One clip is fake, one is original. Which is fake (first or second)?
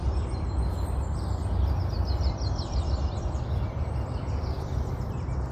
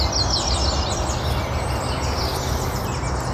first